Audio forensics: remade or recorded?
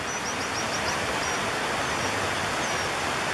recorded